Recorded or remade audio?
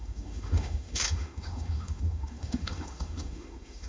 remade